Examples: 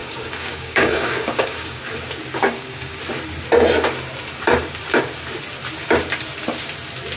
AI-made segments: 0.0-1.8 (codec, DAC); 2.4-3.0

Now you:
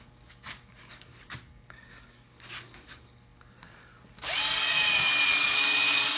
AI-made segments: 0.0-3.9 (codec, DAC); 4.6-6.2

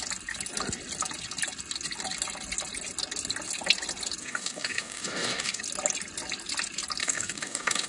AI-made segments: 4.2-5.6 (codec, DAC); 7.0-7.9

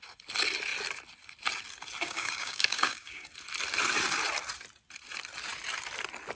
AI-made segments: 2.0-3.3 (codec, DAC)

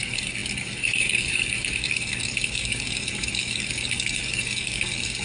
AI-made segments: 0.0-5.2 (codec, DAC)

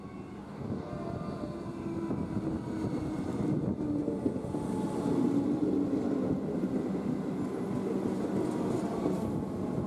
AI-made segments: 0.4-0.9 (codec, DAC)

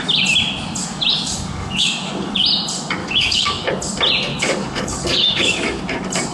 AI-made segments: 1.1-2.4 (codec, DAC); 3.0-3.7; 4.3-5.8

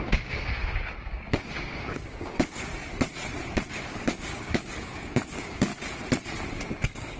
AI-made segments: 0.0-2.7 (codec, DAC); 3.7-5.7; 6.5-7.2